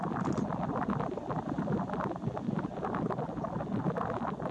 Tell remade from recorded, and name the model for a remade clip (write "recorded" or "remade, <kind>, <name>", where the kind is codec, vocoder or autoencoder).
recorded